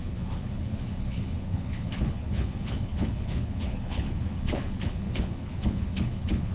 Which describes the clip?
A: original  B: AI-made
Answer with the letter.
B